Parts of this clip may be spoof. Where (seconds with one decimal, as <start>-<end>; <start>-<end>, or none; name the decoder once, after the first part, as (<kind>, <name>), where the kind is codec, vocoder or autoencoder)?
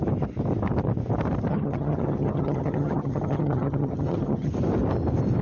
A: 1.5-4.5 (vocoder, HiFi-GAN)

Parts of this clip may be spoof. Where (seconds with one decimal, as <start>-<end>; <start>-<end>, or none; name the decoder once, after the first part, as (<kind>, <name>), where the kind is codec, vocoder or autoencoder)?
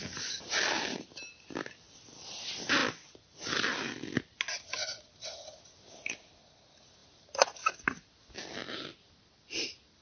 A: none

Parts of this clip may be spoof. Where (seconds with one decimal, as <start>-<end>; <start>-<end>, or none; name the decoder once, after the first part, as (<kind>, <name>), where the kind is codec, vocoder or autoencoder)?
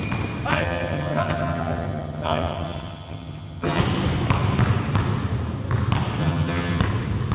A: 0.5-3.8 (vocoder, HiFi-GAN); 6.2-6.8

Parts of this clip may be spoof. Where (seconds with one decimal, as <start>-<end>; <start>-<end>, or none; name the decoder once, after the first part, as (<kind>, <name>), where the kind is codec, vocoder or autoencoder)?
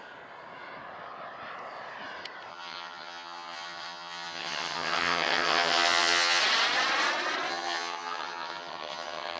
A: 2.5-6.4 (vocoder, HiFi-GAN); 7.5-9.4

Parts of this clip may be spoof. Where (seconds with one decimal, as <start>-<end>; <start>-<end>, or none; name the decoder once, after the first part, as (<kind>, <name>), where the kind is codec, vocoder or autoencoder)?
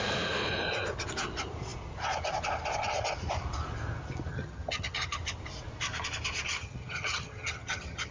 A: 4.3-5.2 (vocoder, HiFi-GAN); 6.5-8.1